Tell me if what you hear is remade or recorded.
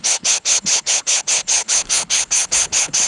remade